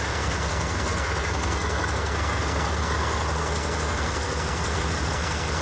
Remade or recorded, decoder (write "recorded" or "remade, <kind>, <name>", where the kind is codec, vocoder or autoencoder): remade, codec, SNAC